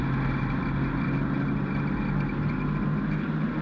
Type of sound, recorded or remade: recorded